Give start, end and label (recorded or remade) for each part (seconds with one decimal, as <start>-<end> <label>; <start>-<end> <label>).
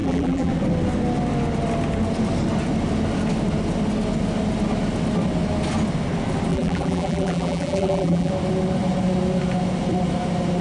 0.0-0.5 remade; 0.5-6.5 recorded; 6.5-8.3 remade; 8.3-10.6 recorded